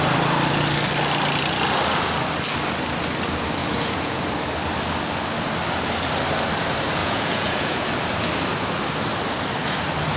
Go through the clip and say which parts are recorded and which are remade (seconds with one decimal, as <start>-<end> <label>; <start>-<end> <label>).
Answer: 0.0-3.6 recorded; 3.6-4.2 remade; 4.2-7.0 recorded; 7.0-7.9 remade; 7.9-10.2 recorded